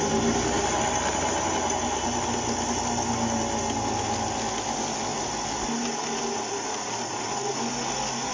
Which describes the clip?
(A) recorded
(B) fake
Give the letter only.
A